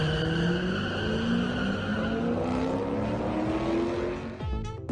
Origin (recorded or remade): recorded